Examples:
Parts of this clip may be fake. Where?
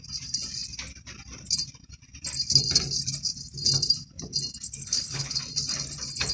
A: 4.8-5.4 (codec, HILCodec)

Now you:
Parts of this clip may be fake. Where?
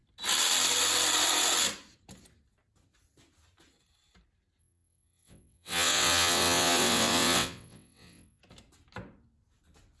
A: 4.6-8.4 (vocoder, WaveNeXt)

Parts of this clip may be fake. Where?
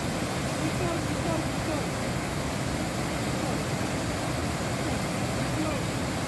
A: 2.0-2.8 (codec, DAC)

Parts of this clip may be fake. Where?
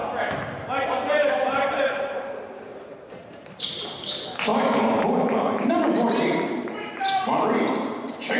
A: 1.3-8.4 (vocoder, BigVGAN v2)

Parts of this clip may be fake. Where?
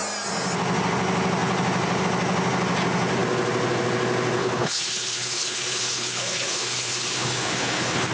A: 4.4-8.1 (codec, HILCodec)